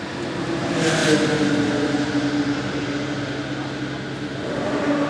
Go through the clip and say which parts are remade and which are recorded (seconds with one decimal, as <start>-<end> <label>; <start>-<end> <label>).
0.0-5.1 recorded